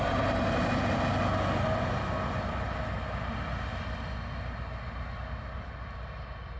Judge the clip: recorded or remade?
recorded